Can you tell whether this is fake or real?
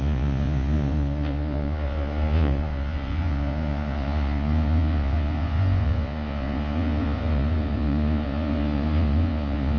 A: fake